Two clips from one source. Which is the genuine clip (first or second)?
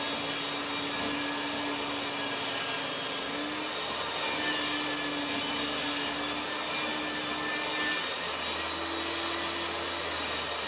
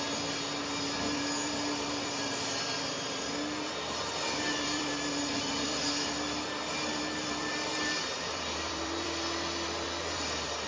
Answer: first